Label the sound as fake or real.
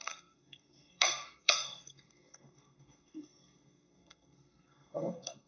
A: fake